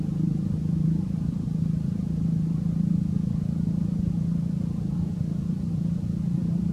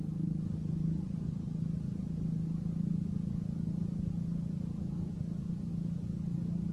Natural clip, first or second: second